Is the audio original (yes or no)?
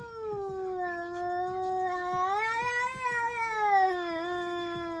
yes